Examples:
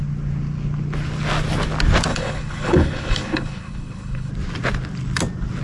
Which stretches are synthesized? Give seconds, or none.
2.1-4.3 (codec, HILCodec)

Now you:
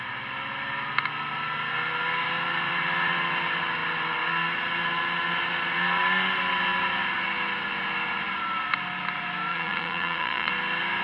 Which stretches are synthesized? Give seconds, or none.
9.5-10.5 (vocoder, Vocos)

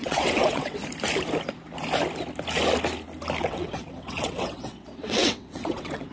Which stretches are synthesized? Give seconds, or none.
0.0-0.8 (vocoder, WaveNeXt); 3.4-6.1